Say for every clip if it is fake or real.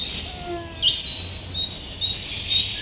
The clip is real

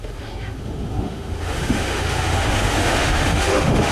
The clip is fake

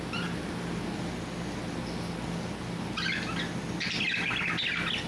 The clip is real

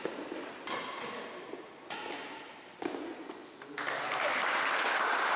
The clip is real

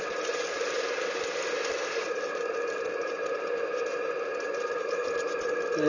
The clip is real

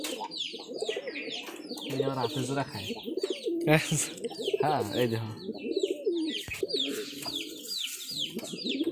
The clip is real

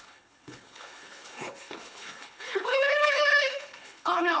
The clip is fake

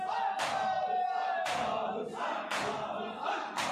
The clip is real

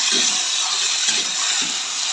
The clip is real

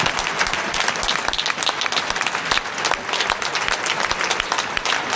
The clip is real